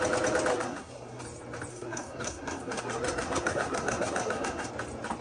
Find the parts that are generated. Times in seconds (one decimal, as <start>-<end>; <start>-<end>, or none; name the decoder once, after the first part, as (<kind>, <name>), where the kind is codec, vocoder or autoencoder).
0.5-1.2 (codec, SNAC); 1.7-4.7